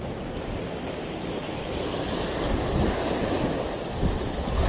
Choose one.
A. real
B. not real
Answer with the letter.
A